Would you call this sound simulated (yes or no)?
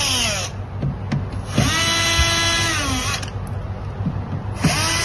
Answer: no